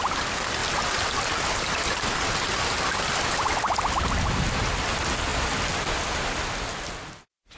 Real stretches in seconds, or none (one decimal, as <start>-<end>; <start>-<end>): 0.0-0.6; 3.5-5.3; 5.9-7.6